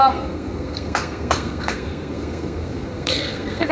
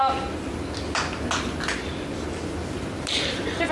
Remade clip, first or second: first